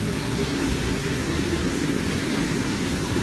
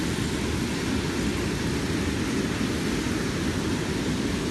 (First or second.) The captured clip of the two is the second